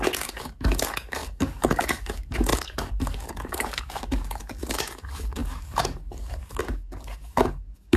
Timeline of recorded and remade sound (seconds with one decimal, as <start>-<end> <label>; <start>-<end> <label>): 0.0-8.0 remade